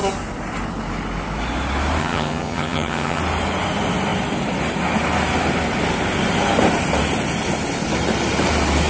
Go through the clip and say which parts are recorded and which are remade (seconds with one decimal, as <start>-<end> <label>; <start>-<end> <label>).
0.0-2.0 recorded; 2.0-3.2 remade; 3.2-8.9 recorded